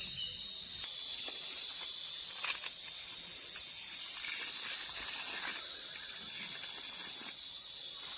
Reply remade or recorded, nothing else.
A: recorded